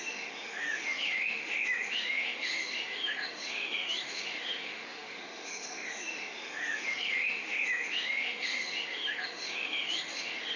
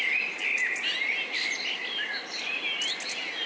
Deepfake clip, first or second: first